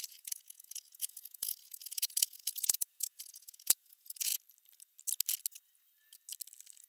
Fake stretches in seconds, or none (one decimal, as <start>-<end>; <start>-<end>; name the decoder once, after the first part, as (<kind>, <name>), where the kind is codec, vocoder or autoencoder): 0.0-4.3 (vocoder, Vocos)